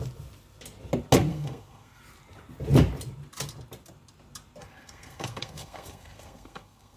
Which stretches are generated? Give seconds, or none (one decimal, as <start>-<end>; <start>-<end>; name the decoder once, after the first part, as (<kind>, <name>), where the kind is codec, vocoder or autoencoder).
1.3-2.0 (codec, SNAC); 4.6-7.0